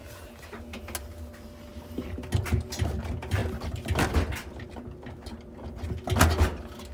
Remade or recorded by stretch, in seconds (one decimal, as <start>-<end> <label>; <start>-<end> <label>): 0.0-6.9 recorded